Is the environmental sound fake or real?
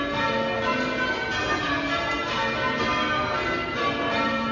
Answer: real